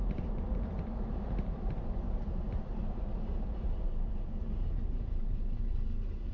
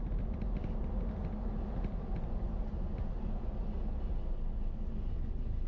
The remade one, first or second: first